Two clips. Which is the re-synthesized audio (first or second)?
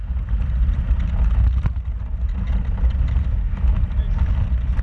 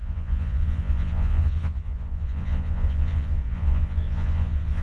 second